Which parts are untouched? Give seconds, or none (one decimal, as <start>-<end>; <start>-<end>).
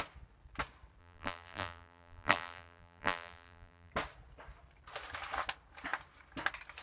0.0-1.0; 3.9-6.8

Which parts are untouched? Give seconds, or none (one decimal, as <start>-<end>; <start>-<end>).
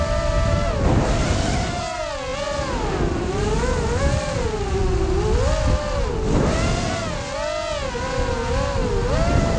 0.0-9.6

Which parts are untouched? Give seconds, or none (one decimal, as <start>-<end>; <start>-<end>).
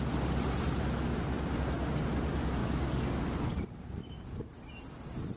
0.0-5.4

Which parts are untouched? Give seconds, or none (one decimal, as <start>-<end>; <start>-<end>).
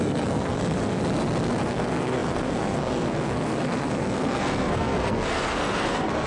1.0-1.6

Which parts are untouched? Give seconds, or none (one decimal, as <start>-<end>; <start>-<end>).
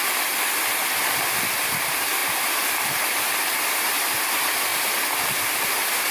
0.0-6.1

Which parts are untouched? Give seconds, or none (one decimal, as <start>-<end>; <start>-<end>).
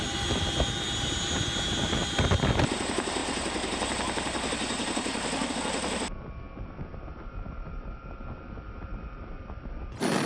0.0-10.3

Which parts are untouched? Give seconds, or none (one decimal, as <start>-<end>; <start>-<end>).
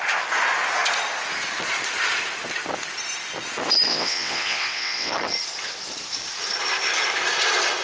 0.0-3.9; 5.1-7.8